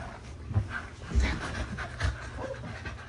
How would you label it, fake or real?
real